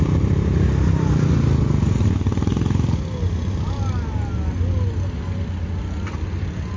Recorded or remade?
recorded